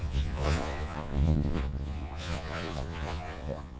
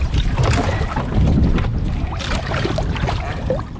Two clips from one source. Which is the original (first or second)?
second